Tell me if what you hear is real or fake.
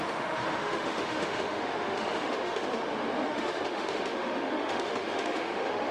fake